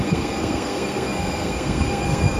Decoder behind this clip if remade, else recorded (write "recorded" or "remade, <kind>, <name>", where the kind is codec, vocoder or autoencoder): remade, codec, SNAC